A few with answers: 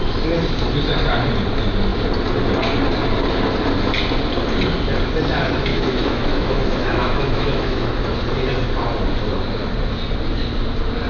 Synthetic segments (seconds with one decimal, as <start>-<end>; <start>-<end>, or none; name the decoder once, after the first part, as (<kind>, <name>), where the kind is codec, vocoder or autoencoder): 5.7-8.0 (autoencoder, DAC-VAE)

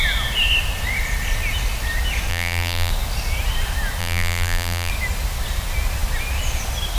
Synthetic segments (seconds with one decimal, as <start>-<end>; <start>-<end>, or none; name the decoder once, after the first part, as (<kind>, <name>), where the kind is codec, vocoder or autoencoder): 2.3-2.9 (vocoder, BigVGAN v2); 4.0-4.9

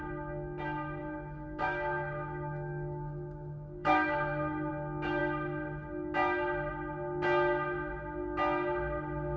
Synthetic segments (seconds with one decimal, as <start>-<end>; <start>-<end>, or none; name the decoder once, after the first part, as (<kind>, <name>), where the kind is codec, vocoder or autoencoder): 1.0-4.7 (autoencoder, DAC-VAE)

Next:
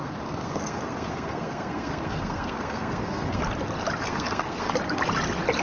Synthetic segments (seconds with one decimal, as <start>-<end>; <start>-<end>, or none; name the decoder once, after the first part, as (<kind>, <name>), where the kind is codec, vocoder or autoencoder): 0.0-3.4 (codec, SNAC); 4.1-4.7

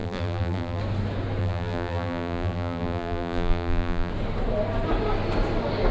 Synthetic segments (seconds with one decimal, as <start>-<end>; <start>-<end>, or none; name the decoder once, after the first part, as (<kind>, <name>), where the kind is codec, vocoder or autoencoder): 0.0-0.8 (vocoder, BigVGAN v2); 1.4-4.1